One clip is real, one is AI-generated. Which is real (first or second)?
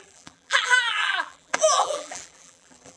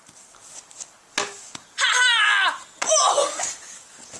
second